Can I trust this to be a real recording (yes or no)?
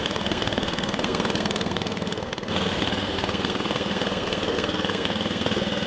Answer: no